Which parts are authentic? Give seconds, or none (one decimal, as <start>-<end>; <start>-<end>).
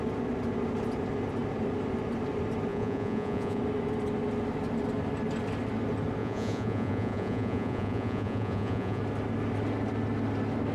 0.0-2.7; 3.6-6.2; 9.0-10.7